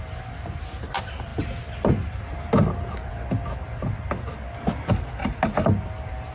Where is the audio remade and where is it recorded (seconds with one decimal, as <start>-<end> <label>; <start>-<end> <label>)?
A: 0.0-6.3 recorded